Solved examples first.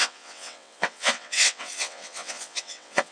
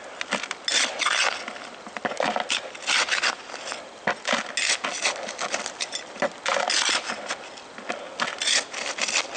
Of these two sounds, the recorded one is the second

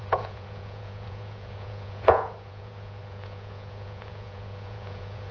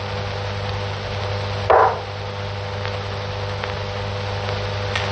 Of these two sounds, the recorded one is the second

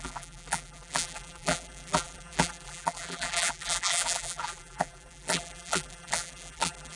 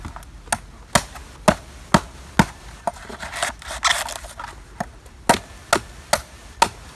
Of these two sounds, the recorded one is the second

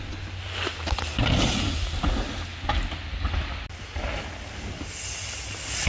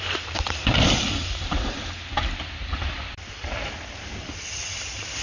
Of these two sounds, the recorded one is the first